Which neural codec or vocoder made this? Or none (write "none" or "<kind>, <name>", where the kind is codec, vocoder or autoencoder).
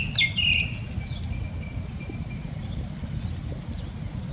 none